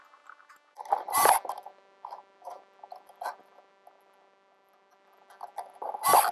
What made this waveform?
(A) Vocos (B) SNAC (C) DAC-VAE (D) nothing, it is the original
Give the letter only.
D